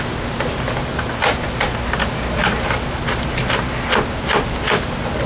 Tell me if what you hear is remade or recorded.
recorded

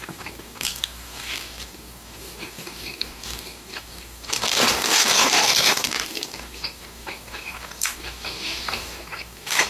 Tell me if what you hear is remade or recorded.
remade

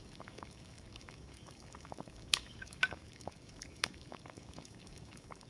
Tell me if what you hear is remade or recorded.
remade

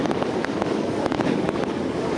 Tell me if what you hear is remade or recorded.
remade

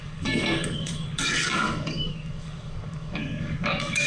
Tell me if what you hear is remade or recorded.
remade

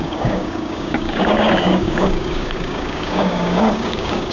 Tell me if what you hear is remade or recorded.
remade